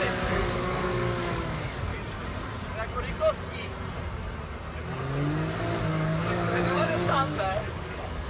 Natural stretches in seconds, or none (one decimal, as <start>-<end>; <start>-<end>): 1.9-5.9